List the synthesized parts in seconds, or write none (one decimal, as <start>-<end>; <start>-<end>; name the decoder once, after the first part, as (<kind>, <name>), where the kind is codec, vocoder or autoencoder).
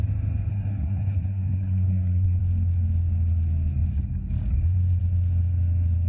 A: 0.5-2.4 (codec, SNAC)